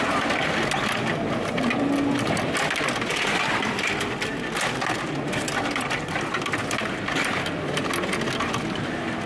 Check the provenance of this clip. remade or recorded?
recorded